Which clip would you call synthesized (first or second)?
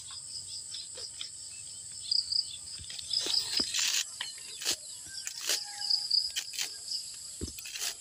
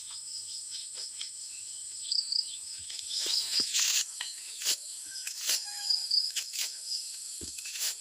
second